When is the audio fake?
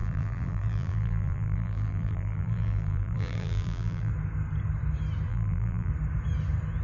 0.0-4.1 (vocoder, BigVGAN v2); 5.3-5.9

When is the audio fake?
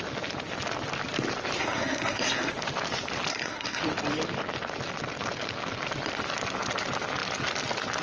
1.6-2.5 (codec, SNAC); 3.3-3.8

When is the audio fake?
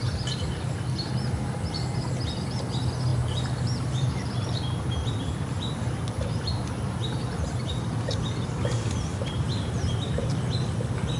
3.1-4.6 (vocoder, BigVGAN v2); 9.1-10.4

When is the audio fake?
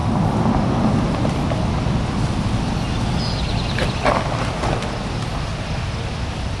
none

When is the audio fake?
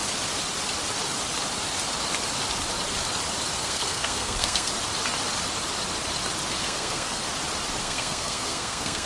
3.6-4.7 (codec, SNAC); 6.6-7.2; 7.8-9.1